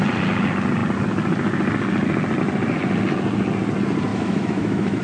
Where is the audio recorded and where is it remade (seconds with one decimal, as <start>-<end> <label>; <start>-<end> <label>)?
0.0-4.1 recorded; 4.1-5.0 remade

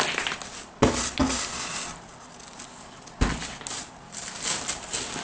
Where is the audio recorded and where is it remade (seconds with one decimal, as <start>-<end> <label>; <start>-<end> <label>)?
0.0-5.2 recorded